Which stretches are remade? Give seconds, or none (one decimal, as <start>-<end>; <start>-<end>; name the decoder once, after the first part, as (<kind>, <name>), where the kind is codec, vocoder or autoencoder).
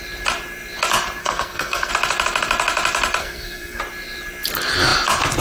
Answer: 1.2-1.9 (codec, SNAC); 3.2-3.8